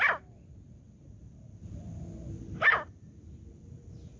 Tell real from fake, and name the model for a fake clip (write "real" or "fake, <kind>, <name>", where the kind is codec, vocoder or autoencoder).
real